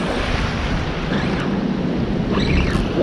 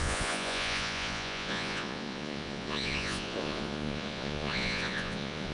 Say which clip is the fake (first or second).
second